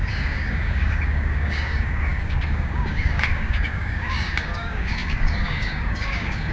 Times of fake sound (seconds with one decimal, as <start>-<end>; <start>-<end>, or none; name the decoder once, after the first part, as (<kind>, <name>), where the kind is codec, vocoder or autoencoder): 0.0-6.5 (codec, DAC)